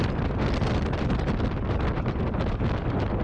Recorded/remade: recorded